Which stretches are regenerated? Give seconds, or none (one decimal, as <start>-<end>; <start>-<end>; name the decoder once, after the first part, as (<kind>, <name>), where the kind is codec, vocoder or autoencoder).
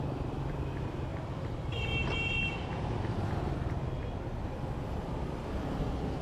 none